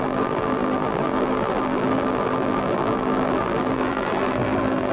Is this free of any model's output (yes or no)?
no